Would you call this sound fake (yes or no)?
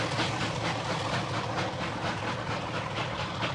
no